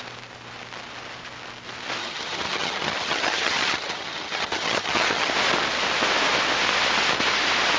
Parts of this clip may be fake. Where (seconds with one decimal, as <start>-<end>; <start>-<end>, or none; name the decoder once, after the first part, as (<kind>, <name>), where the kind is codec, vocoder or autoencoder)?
2.0-5.3 (vocoder, HiFi-GAN)